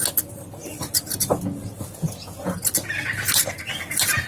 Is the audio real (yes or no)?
yes